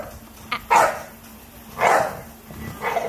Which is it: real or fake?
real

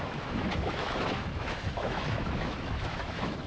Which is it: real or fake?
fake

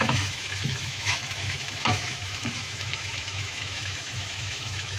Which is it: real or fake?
fake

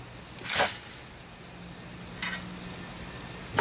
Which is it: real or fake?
real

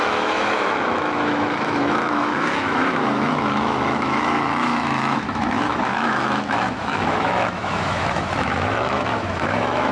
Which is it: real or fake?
fake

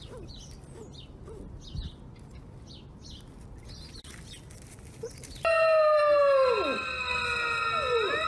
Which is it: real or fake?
real